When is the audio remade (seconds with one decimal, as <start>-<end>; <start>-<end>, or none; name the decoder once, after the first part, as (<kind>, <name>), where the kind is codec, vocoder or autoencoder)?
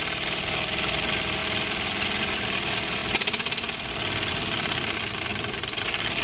0.0-3.0 (vocoder, BigVGAN v2); 4.3-6.2